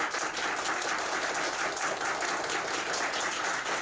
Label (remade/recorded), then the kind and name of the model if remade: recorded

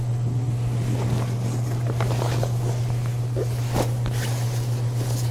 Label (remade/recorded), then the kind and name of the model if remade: recorded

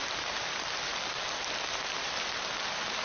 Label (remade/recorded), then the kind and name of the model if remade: recorded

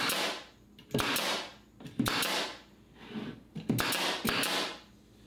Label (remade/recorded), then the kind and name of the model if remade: recorded